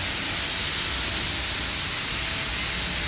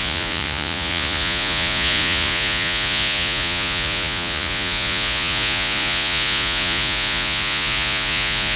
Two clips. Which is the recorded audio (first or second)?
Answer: first